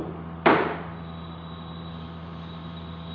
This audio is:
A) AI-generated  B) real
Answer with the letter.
A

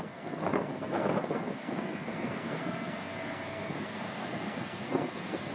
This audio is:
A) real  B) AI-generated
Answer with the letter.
B